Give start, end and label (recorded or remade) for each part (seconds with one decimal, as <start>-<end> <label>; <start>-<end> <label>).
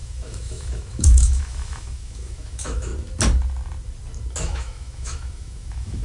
0.0-2.9 remade; 2.9-4.4 recorded; 4.4-6.0 remade